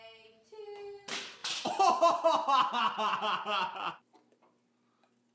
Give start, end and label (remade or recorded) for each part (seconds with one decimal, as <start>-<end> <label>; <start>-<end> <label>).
0.0-1.4 recorded; 1.4-3.2 remade; 3.2-5.3 recorded